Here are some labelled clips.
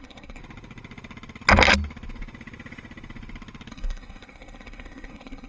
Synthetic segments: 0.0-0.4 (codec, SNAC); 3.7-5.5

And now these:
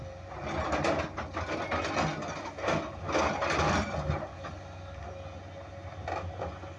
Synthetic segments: none

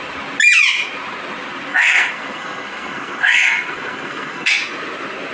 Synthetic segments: 1.7-4.5 (codec, SNAC)

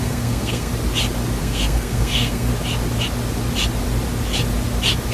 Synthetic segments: 0.0-0.7 (codec, SNAC); 1.4-2.5

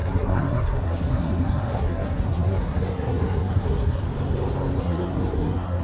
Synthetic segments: 0.0-4.0 (codec, SNAC); 4.8-5.8